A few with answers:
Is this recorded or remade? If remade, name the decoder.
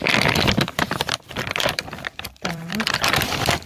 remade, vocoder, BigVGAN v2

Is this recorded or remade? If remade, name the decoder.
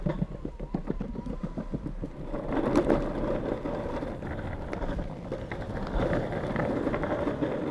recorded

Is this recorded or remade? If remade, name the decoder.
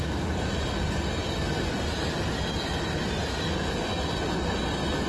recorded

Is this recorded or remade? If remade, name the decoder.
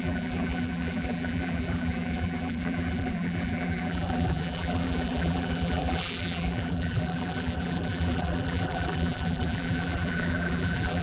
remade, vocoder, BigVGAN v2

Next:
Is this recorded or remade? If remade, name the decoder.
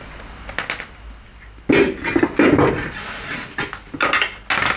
recorded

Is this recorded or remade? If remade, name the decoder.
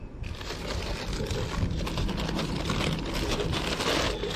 recorded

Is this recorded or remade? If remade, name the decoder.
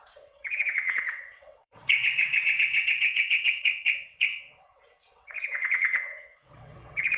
remade, vocoder, WaveNeXt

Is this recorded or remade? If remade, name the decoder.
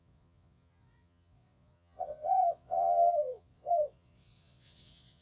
remade, vocoder, Vocos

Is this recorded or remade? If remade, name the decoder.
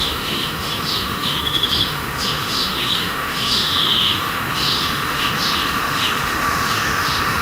remade, autoencoder, DAC-VAE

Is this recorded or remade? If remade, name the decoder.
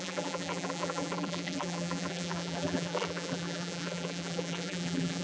remade, vocoder, BigVGAN v2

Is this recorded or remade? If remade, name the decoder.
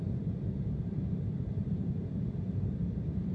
remade, vocoder, BigVGAN v2